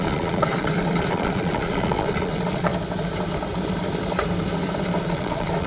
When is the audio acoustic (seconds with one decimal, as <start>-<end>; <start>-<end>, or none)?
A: 2.7-5.0